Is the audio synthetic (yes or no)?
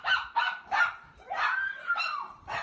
no